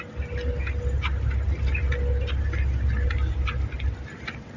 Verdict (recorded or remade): recorded